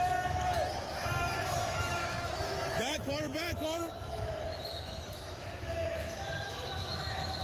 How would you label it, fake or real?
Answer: fake